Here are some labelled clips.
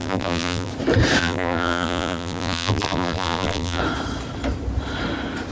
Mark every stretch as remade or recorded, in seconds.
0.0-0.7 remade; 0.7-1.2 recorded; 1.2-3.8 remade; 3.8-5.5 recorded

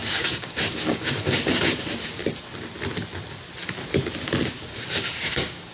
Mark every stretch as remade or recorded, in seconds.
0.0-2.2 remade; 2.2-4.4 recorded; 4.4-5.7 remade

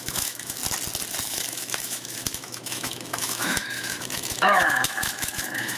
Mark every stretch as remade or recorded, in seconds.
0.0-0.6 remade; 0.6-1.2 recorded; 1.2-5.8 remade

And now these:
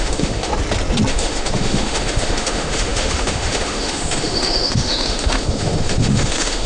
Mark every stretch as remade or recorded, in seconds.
0.0-0.5 remade; 0.5-1.1 recorded; 1.1-6.7 remade